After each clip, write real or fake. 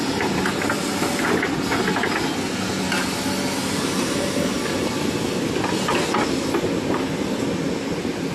real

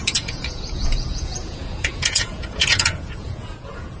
fake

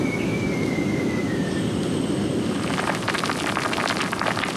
real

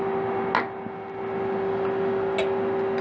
real